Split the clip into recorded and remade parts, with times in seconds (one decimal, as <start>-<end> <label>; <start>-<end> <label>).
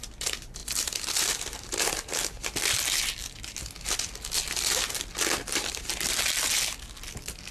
0.0-7.5 recorded